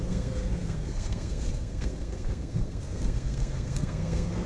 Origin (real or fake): fake